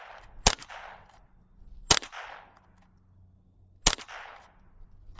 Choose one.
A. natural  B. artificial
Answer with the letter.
A